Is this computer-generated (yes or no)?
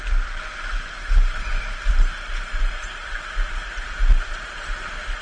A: no